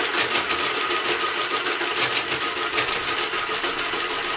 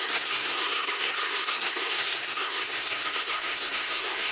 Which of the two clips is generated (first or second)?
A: second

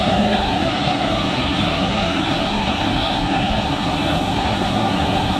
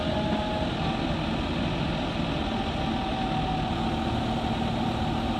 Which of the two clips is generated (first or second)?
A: first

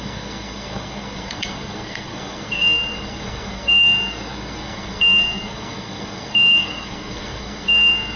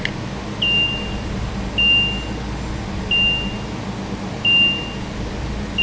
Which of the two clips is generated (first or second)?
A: first